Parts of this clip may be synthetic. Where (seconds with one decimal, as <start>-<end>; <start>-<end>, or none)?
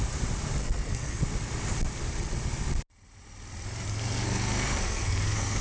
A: 0.6-1.2; 3.9-5.6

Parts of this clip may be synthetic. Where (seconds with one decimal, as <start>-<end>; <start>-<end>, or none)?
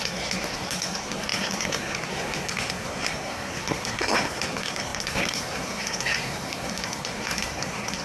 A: 0.0-8.0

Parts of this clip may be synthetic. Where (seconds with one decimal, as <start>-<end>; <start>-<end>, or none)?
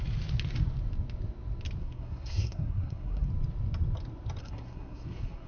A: 1.8-3.3; 4.4-5.5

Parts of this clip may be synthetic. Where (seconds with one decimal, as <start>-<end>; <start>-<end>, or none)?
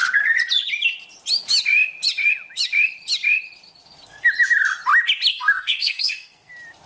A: 5.3-6.5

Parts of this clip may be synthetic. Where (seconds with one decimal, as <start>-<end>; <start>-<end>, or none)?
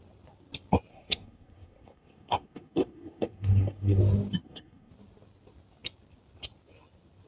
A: 0.9-4.0; 4.4-4.9